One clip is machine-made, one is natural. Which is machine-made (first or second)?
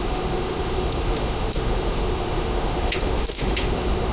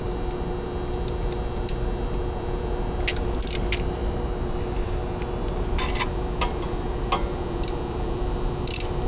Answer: first